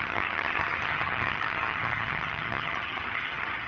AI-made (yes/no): yes